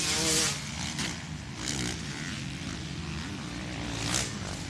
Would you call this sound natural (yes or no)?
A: yes